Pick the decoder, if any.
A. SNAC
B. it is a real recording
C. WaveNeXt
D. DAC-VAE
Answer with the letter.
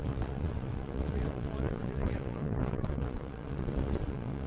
C